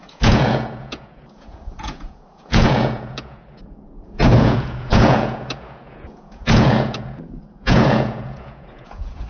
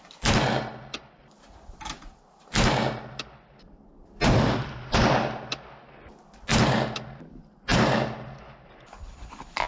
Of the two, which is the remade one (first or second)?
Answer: first